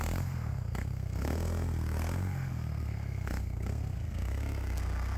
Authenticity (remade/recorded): remade